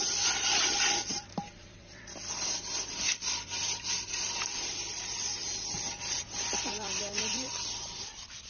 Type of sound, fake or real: fake